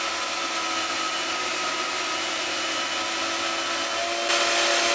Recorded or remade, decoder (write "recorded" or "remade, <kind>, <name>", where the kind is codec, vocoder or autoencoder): recorded